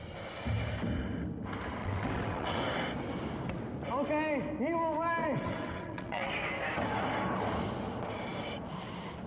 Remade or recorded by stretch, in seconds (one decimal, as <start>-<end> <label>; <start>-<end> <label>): 0.0-1.8 recorded; 1.8-2.6 remade; 2.6-5.2 recorded; 5.2-6.3 remade; 6.3-9.3 recorded